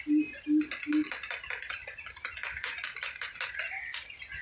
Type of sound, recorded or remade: recorded